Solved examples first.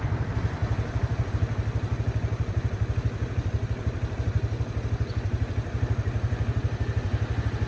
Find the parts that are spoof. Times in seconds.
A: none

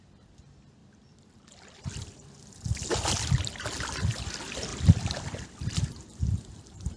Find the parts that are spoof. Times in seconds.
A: 0.0-0.8 (vocoder, BigVGAN v2); 4.3-7.0

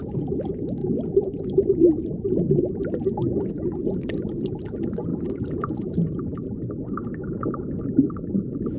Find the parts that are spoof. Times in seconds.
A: 0.8-1.4 (vocoder, BigVGAN v2); 5.1-6.7